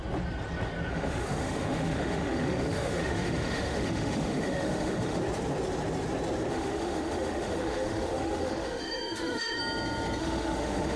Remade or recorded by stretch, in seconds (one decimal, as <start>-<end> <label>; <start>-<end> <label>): 0.0-0.9 recorded; 0.9-5.2 remade; 5.2-6.5 recorded; 6.5-9.6 remade; 9.6-10.2 recorded; 10.2-11.0 remade